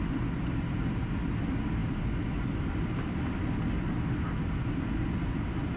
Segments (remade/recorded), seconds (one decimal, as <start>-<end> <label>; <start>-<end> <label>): 0.0-5.8 recorded